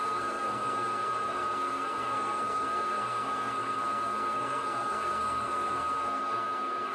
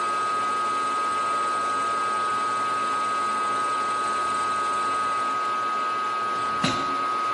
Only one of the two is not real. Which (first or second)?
first